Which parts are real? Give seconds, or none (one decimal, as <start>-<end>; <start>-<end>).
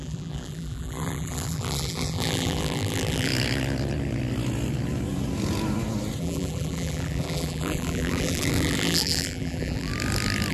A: 3.3-6.2; 9.9-10.5